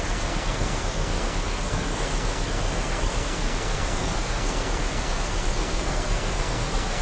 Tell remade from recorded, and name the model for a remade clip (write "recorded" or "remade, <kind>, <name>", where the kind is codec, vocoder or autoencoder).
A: remade, codec, SNAC